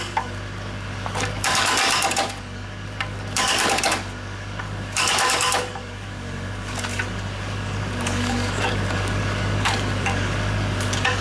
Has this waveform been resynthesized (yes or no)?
yes